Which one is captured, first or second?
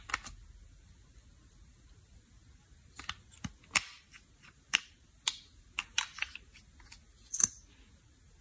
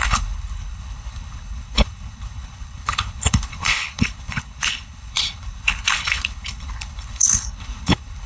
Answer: first